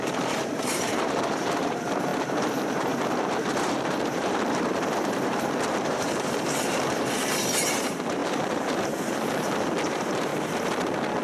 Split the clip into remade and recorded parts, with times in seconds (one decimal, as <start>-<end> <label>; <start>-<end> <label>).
0.0-10.3 remade; 10.3-11.2 recorded